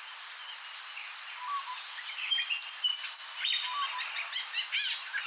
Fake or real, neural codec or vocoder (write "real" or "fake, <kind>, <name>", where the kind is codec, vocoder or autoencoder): real